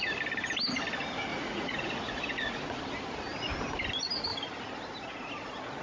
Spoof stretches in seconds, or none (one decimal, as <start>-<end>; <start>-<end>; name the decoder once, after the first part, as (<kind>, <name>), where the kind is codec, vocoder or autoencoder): 1.3-2.8 (vocoder, Vocos)

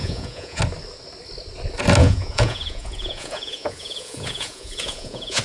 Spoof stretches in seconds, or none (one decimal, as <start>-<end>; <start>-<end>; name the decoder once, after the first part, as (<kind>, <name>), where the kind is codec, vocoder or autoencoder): 0.0-0.6 (vocoder, Vocos); 2.0-5.4

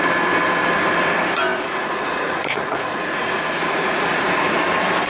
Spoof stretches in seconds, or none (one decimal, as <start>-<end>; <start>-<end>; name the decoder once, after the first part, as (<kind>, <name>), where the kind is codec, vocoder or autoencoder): 1.5-4.6 (vocoder, Vocos)

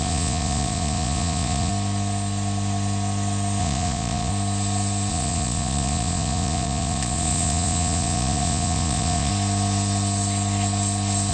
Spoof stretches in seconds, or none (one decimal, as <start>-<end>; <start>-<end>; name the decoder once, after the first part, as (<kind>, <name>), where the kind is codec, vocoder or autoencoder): 0.0-1.7 (vocoder, Vocos); 3.6-4.3; 5.1-9.3

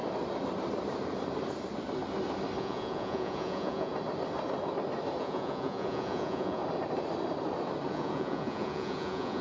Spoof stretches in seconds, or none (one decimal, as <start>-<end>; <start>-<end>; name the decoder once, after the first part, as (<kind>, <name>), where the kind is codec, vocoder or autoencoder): 2.6-3.9 (vocoder, Vocos); 5.2-6.6; 7.9-9.4

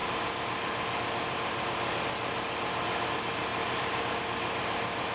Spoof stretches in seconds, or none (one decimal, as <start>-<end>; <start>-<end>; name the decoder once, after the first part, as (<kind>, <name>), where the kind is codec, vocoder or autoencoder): none